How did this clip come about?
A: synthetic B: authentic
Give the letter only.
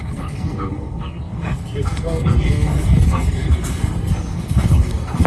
A